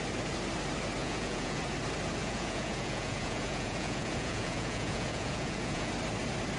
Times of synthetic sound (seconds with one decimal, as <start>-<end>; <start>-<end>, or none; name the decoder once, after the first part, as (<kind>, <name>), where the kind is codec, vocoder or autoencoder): 1.0-1.6 (vocoder, Vocos); 2.2-5.9